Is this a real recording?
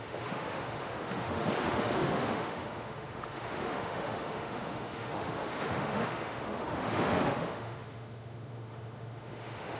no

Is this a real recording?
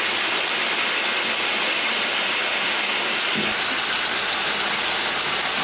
yes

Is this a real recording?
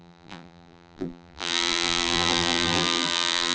no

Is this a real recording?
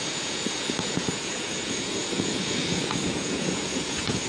no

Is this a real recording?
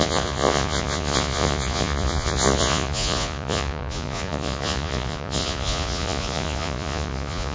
no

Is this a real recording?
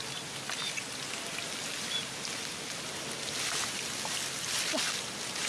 yes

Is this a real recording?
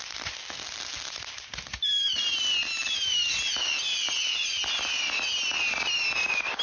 yes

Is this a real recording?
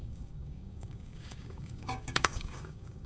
no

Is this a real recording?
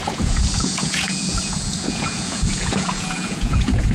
no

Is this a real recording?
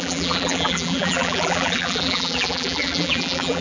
no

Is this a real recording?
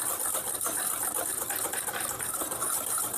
yes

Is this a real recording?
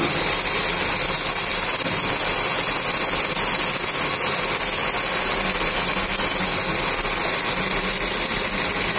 yes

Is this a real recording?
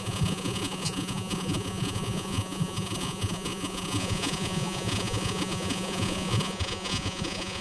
no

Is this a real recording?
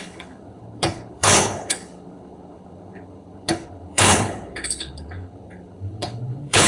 no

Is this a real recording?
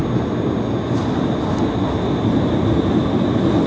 yes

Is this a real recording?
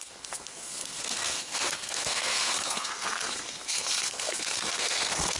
no